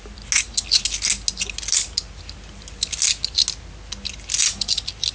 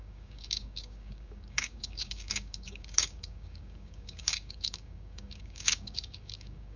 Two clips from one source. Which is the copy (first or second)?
second